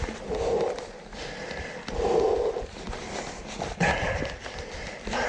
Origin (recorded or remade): recorded